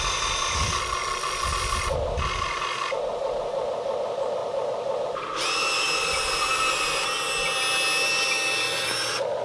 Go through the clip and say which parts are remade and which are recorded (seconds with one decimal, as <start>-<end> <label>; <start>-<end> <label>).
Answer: 0.0-9.4 recorded